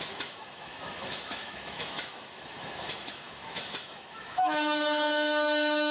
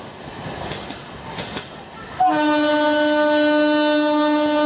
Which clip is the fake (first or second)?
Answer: first